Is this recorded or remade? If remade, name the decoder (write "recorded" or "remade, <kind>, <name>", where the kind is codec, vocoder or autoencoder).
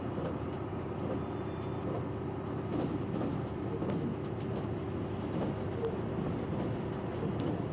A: recorded